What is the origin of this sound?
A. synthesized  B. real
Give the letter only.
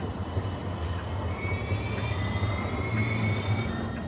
B